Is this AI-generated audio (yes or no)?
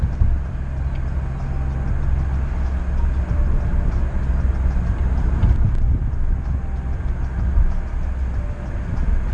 no